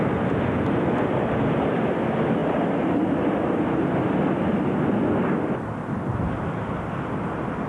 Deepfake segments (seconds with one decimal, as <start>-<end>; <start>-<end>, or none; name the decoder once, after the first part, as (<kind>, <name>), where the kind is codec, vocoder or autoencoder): none